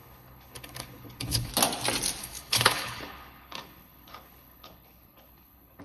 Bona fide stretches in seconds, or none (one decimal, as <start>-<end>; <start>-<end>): 1.5-2.2